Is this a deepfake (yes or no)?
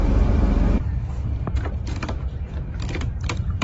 yes